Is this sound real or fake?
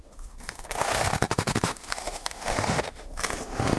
fake